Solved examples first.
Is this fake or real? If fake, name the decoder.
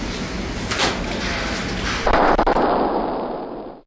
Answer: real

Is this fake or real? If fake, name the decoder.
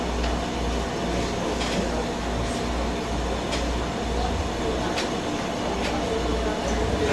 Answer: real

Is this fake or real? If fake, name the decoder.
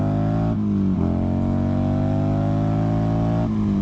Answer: real